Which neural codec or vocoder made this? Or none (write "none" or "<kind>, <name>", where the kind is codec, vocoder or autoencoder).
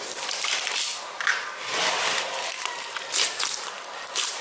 vocoder, BigVGAN v2